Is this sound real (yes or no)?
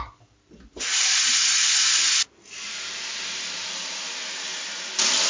yes